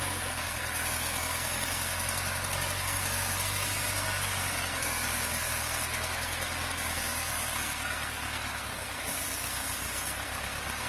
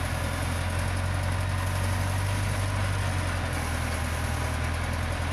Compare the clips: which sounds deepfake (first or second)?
first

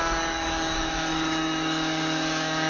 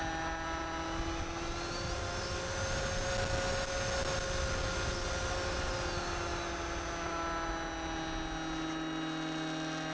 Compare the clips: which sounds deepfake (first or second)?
first